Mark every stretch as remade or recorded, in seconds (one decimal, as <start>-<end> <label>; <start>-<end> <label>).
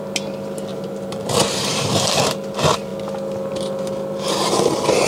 0.0-0.7 recorded; 0.7-1.9 remade; 1.9-5.1 recorded